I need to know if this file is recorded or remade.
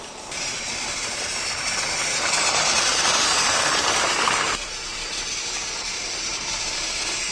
remade